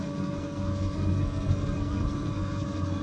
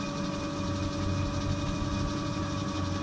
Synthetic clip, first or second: first